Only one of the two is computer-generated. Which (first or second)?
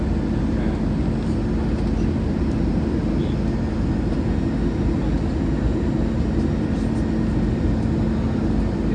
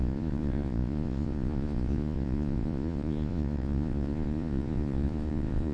second